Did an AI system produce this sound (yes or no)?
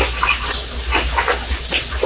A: no